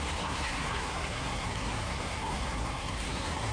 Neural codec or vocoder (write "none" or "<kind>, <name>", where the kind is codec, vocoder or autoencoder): codec, SNAC